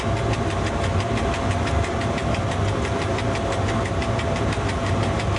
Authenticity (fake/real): real